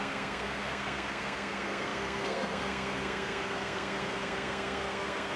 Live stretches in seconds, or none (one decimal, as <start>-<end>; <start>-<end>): none